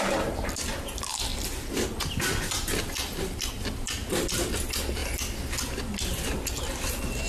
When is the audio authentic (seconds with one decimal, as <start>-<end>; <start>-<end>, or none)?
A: 0.0-1.3; 2.0-7.3